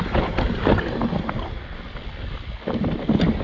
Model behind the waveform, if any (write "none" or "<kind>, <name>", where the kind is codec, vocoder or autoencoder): none